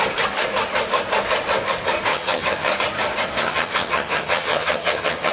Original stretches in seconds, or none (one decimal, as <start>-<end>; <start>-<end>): 0.0-2.1; 2.7-3.4